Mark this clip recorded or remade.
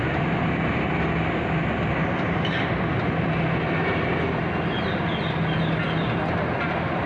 recorded